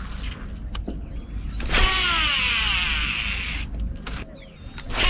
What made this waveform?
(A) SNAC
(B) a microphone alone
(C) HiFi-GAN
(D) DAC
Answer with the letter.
B